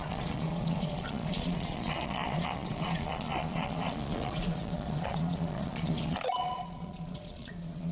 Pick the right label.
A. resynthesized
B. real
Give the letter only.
A